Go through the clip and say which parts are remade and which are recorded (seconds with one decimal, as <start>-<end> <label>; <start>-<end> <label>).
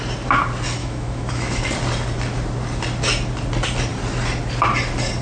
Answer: 0.0-0.8 recorded; 0.8-1.6 remade; 1.6-5.2 recorded